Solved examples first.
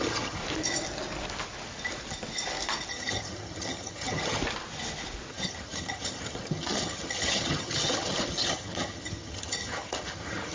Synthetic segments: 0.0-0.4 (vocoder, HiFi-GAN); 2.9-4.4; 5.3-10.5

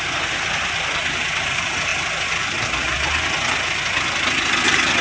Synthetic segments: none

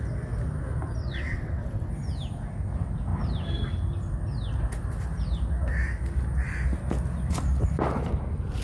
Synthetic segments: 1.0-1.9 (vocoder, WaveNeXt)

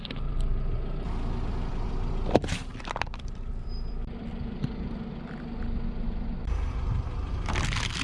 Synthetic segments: 0.0-0.5 (vocoder, BigVGAN v2); 1.7-8.0

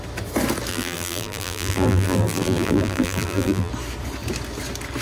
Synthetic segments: 0.7-3.7 (vocoder, BigVGAN v2)